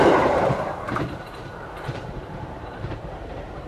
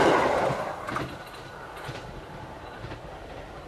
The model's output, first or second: first